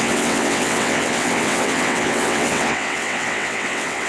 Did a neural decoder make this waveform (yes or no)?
yes